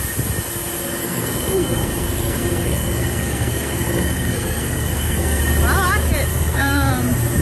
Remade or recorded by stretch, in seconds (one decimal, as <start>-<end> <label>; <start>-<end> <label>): 0.0-1.0 recorded; 1.0-5.4 remade; 5.4-6.3 recorded; 6.3-6.9 remade; 6.9-7.4 recorded